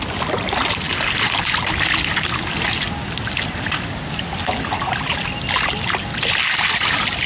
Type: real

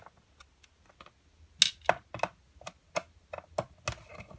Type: real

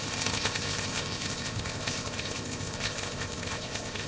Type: fake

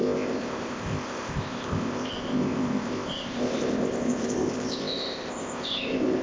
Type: fake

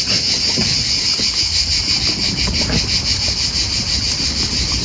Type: real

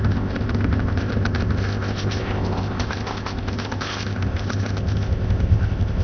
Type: fake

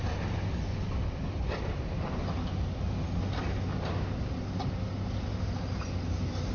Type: real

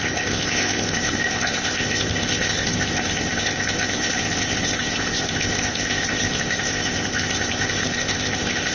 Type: fake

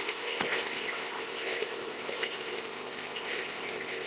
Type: fake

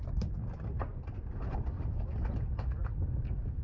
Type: real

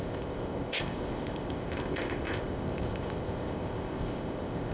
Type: fake